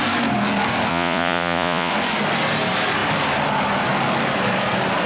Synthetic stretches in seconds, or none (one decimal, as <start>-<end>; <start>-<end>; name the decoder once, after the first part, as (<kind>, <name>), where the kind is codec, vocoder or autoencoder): 0.9-1.9 (vocoder, Vocos)

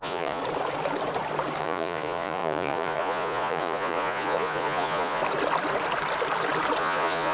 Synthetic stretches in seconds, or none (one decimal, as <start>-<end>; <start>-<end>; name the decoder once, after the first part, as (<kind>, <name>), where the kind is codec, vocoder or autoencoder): 0.0-0.4 (vocoder, Vocos); 1.6-5.2; 6.8-7.3

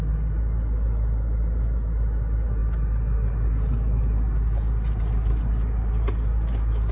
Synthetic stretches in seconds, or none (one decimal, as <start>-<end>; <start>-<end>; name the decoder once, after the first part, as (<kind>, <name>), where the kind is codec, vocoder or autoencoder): none

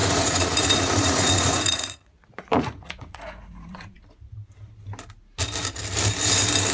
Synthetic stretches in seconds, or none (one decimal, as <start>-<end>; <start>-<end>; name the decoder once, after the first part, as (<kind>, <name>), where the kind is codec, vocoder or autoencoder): 0.0-4.0 (vocoder, Vocos)

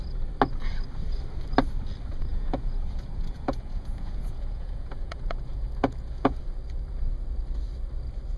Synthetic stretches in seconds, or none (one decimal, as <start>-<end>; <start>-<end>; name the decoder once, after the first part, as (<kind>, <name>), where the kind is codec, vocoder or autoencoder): 2.3-6.4 (vocoder, Vocos)

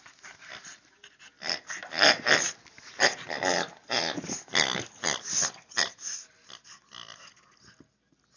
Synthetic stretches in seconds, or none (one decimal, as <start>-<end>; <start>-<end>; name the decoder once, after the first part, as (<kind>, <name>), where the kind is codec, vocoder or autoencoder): none

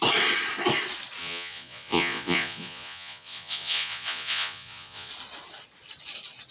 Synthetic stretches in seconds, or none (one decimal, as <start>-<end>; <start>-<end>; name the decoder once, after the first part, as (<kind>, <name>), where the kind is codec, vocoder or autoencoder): 1.2-5.1 (vocoder, Vocos)

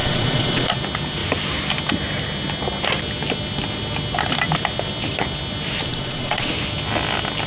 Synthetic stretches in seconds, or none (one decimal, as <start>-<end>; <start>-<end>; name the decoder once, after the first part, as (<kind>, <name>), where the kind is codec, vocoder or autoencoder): 0.0-0.7 (vocoder, Vocos); 5.9-6.5